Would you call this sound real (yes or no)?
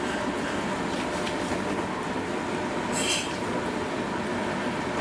yes